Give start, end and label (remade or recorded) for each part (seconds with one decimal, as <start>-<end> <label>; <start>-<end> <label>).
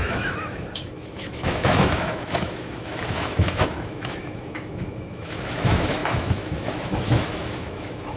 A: 0.0-8.2 remade